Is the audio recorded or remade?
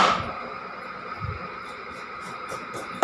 recorded